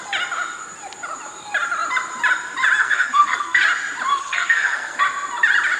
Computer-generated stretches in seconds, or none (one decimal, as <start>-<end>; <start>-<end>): 2.8-3.6; 4.1-5.0